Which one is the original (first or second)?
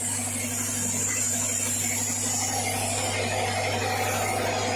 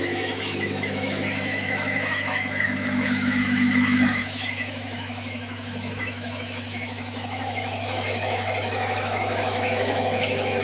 first